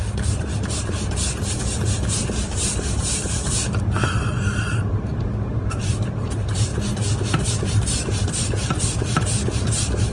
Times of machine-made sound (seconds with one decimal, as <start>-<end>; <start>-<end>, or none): 0.0-6.7; 7.5-10.1